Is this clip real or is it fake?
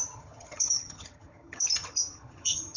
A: fake